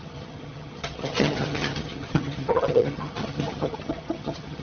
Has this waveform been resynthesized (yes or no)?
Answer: yes